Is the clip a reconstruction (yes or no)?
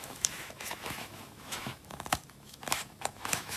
yes